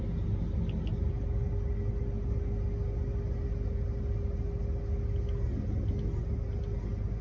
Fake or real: real